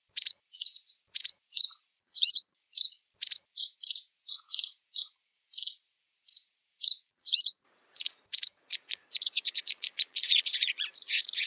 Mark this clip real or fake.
fake